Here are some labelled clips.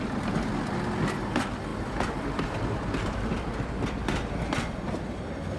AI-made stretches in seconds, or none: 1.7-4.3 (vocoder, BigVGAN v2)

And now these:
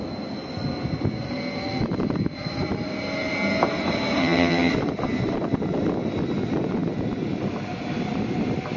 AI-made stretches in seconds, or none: 4.2-4.7 (vocoder, HiFi-GAN)

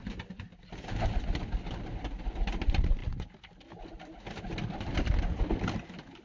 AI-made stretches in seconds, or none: none

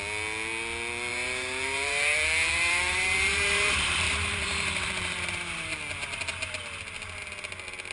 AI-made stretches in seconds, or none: 1.1-5.8 (vocoder, BigVGAN v2)

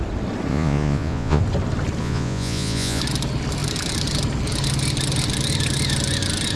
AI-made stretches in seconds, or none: 0.5-1.4 (vocoder, Vocos); 2.0-3.0

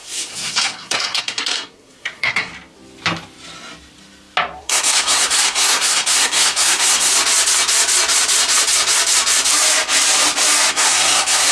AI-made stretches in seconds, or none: 0.0-2.5 (codec, SNAC); 4.6-7.1; 10.7-11.5

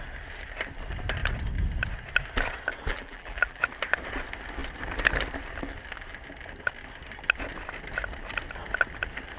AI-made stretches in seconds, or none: 2.9-3.6 (vocoder, BigVGAN v2)